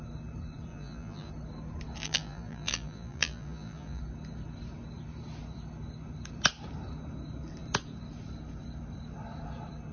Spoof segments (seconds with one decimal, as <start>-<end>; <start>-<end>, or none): 0.7-1.3; 2.0-4.0